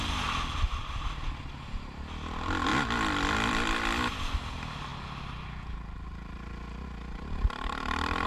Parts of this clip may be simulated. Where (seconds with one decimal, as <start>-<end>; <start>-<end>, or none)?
none